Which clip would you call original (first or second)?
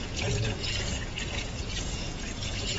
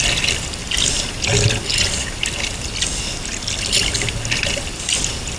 second